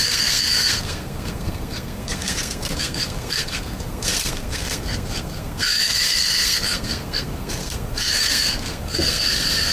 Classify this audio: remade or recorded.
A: remade